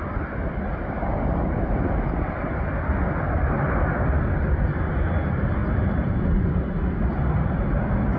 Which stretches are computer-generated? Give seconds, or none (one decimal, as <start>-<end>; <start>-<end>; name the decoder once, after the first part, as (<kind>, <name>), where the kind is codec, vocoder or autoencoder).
none